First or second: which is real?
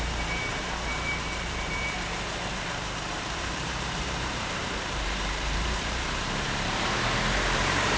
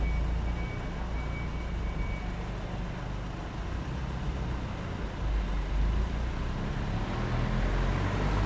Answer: second